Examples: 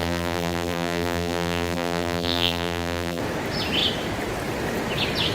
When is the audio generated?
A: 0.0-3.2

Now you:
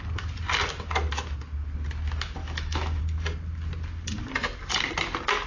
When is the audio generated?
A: 2.4-3.0